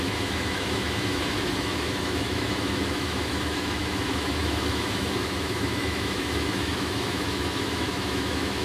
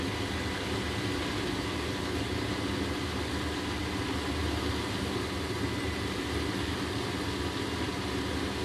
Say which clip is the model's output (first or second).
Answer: first